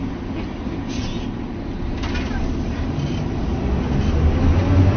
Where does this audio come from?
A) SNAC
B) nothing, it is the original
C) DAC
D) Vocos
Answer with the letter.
B